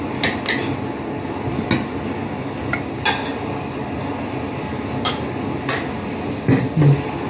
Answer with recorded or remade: recorded